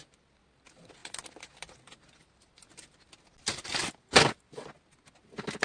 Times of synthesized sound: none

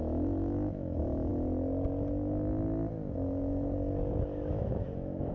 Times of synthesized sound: 0.0-1.3; 4.5-5.3

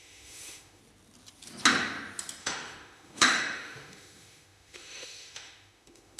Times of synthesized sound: 0.0-0.8; 2.4-6.2

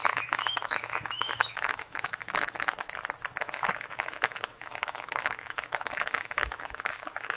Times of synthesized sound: 0.0-2.9; 3.4-7.4

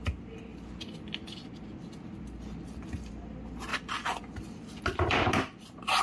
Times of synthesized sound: none

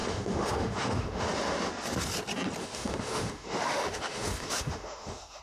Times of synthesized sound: 0.0-1.3; 2.6-5.4

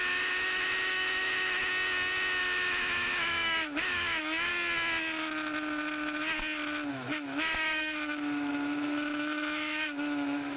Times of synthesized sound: 0.0-1.6; 2.4-4.5; 6.9-10.6